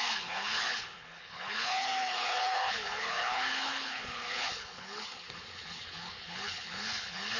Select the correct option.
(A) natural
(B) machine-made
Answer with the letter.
B